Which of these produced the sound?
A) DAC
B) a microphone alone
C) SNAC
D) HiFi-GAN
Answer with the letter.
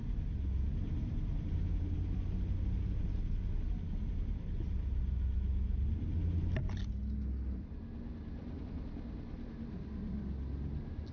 B